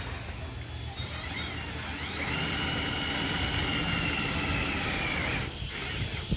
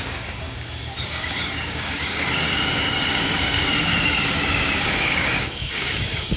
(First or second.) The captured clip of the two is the first